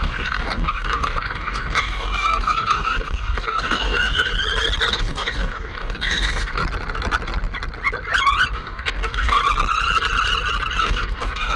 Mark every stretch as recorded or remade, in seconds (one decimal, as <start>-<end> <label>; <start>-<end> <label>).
0.0-4.3 remade; 4.3-4.9 recorded; 4.9-6.6 remade; 6.6-8.5 recorded; 8.5-9.4 remade; 9.4-10.8 recorded; 10.8-11.6 remade